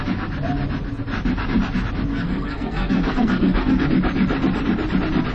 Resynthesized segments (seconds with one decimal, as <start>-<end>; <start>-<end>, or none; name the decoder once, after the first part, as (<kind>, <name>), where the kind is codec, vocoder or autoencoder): 2.1-3.8 (codec, SNAC)